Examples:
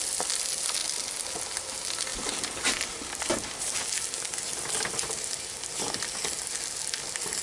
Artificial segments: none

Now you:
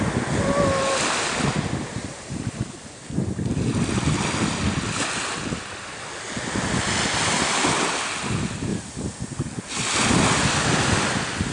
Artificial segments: none